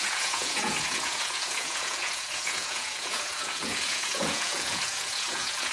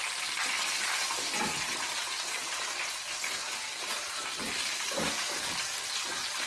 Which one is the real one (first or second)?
second